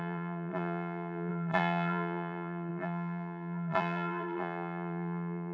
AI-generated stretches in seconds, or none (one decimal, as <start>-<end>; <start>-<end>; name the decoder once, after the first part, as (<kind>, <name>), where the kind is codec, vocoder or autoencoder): 0.0-5.5 (vocoder, BigVGAN v2)